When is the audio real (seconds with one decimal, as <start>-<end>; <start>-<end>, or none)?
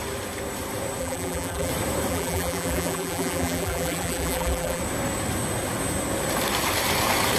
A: 0.0-1.0; 1.7-2.1; 4.8-7.4